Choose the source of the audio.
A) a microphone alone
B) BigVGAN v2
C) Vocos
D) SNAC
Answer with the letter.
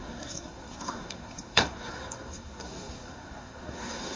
D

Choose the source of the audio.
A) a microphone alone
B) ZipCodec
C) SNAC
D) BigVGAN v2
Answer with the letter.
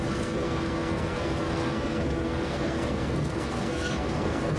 C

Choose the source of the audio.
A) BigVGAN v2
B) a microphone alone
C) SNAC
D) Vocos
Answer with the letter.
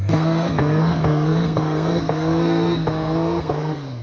C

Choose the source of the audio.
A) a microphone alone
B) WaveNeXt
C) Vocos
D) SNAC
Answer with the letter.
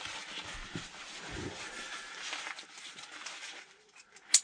A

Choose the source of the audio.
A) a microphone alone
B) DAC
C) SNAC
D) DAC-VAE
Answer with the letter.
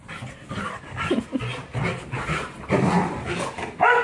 A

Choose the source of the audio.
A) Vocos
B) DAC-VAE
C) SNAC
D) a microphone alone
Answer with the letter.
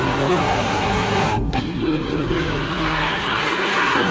C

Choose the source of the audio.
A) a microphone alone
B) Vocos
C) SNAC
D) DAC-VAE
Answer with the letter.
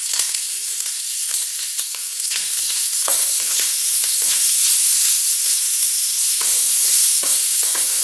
C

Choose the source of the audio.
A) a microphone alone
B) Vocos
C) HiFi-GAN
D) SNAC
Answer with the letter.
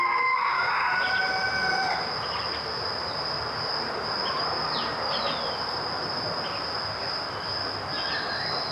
A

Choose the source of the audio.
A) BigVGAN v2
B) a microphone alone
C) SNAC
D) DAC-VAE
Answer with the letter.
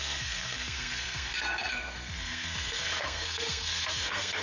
C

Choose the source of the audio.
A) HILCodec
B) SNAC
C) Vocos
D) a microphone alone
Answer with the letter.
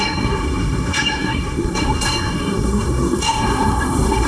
B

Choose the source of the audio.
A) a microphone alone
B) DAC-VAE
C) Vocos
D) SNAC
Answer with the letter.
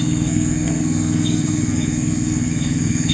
D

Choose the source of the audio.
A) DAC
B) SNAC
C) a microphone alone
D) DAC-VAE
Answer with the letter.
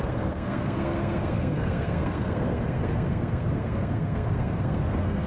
B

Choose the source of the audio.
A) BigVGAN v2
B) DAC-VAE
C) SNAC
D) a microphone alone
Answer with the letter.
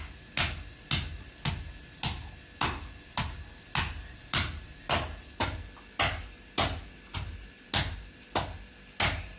D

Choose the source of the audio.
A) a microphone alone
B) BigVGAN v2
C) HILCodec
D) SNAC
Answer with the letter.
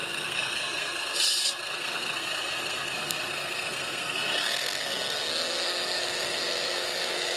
D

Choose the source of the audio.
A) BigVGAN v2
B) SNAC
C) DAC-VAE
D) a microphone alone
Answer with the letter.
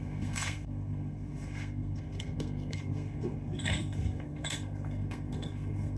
B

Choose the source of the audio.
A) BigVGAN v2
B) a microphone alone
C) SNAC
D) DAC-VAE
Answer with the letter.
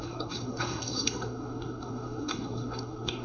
C